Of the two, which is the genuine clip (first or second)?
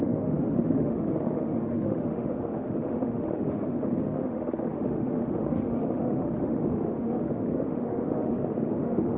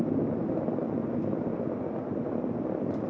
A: second